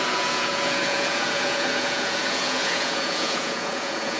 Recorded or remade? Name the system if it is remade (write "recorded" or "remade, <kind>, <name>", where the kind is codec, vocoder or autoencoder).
remade, vocoder, Vocos